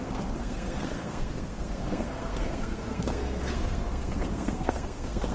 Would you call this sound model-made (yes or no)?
yes